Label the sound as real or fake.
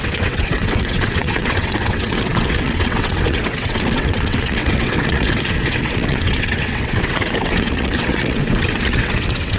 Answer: fake